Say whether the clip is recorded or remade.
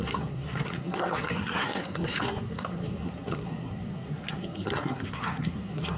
remade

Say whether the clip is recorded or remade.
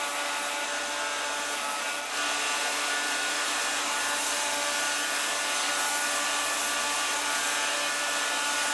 recorded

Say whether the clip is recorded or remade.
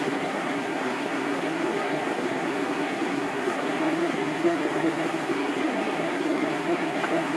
remade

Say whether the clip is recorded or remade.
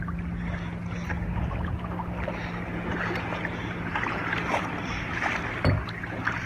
recorded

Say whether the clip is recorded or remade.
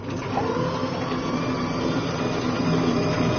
recorded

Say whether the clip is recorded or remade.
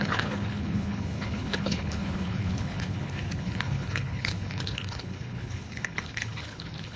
remade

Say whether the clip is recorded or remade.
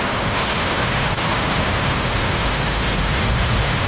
remade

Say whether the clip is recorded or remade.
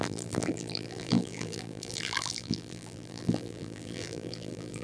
remade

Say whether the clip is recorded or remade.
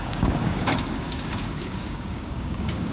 remade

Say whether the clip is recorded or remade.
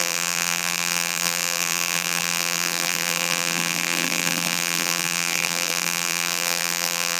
remade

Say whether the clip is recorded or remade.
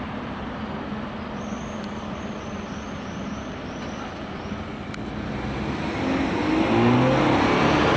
recorded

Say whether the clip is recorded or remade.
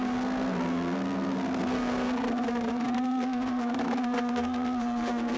remade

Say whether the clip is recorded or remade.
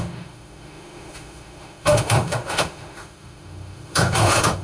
remade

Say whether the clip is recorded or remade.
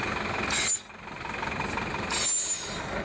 recorded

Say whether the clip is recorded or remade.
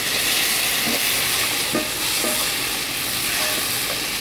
recorded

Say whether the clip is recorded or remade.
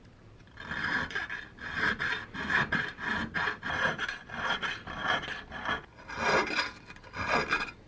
recorded